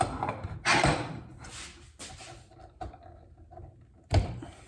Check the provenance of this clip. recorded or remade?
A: recorded